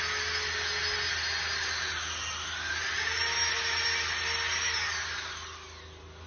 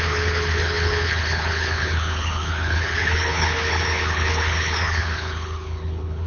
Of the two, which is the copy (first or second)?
second